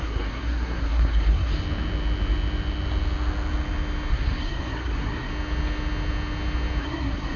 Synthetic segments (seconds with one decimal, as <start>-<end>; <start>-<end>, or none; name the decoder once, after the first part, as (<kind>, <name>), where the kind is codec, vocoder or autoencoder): 0.0-1.5 (codec, SNAC); 4.1-5.3; 6.8-7.4